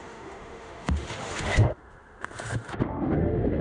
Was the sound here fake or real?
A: fake